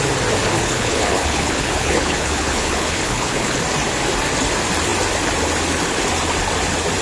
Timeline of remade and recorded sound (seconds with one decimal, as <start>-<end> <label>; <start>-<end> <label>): 0.0-0.4 recorded; 0.4-3.6 remade; 3.6-7.0 recorded